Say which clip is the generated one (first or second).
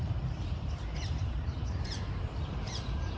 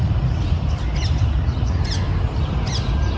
first